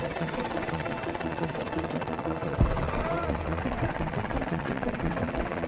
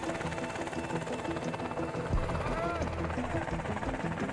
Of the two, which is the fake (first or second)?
first